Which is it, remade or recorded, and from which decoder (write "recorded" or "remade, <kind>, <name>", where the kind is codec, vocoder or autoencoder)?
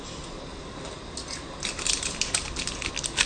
recorded